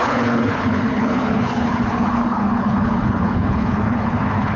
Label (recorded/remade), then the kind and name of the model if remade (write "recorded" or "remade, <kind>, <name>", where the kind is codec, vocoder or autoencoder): remade, codec, HILCodec